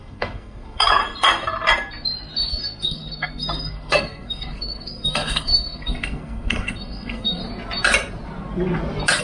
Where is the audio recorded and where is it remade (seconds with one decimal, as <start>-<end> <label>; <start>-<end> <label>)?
0.0-1.0 remade; 1.0-2.5 recorded; 2.5-7.4 remade; 7.4-9.2 recorded

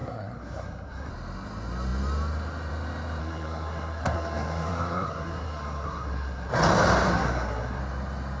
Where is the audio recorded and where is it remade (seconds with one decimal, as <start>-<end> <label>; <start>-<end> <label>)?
0.0-1.1 remade; 1.1-3.2 recorded; 3.2-6.6 remade; 6.6-7.1 recorded; 7.1-7.8 remade; 7.8-8.4 recorded

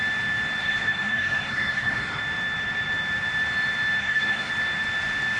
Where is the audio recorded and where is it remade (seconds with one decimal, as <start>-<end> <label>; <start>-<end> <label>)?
0.0-0.6 recorded; 0.6-2.2 remade; 2.2-4.0 recorded; 4.0-4.5 remade; 4.5-5.4 recorded

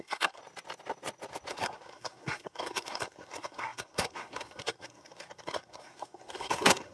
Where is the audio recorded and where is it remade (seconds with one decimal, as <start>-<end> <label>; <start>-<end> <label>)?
0.0-0.4 remade; 0.4-1.5 recorded; 1.5-6.9 remade